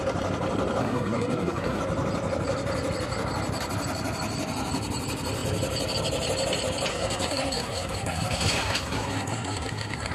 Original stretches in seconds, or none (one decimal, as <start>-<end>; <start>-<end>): 0.0-0.8; 1.8-6.9